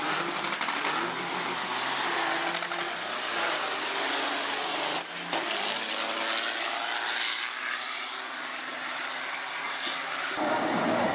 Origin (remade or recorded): recorded